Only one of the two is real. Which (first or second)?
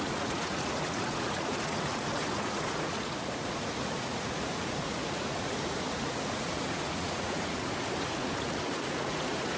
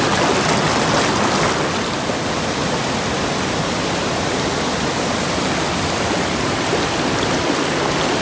second